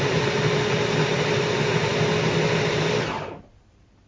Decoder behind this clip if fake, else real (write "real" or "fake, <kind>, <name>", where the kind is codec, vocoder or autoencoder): real